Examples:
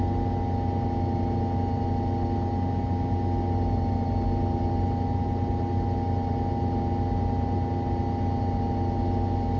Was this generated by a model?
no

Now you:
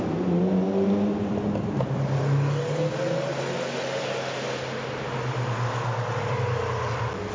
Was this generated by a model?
no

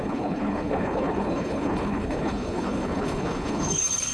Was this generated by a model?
yes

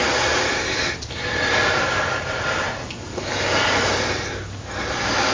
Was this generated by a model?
no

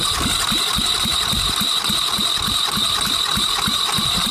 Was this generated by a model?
no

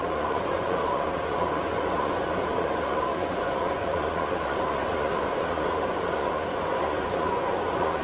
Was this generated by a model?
yes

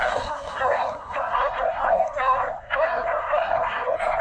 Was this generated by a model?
yes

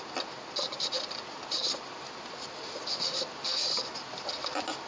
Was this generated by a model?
yes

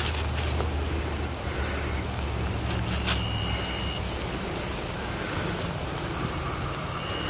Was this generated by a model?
no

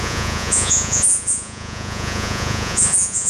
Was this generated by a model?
yes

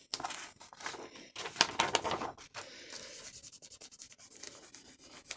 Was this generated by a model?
no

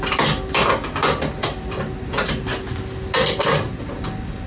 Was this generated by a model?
no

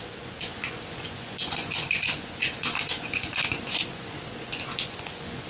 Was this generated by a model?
yes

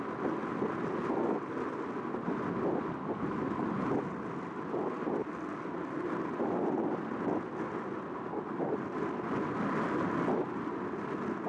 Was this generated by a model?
no